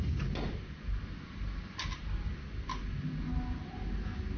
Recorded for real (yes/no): yes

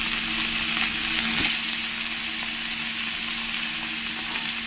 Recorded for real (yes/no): yes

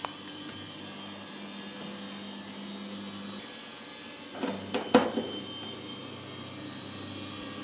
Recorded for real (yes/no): yes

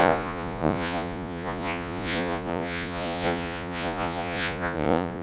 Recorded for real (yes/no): no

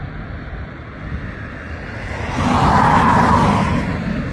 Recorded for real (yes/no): yes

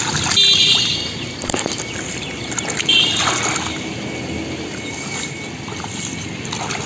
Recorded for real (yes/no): yes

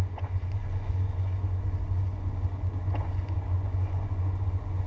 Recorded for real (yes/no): no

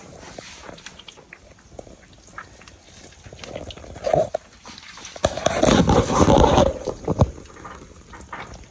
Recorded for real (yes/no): yes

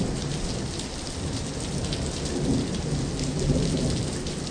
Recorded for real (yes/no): yes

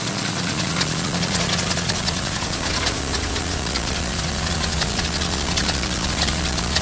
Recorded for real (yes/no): no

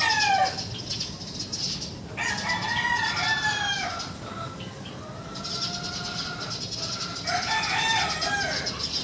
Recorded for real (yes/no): yes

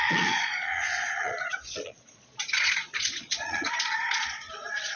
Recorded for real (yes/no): no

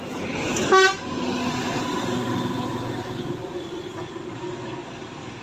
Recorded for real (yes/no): yes